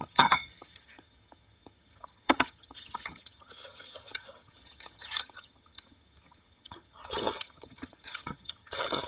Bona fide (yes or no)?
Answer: no